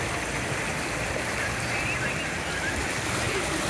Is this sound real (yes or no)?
yes